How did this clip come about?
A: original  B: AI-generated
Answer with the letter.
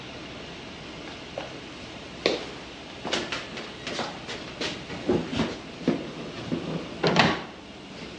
A